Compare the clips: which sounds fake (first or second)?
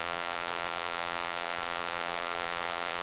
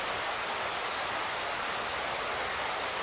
first